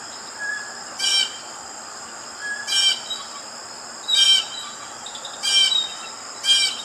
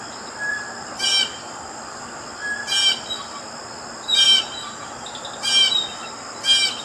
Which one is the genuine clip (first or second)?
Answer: second